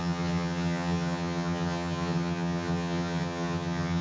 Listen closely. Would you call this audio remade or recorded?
remade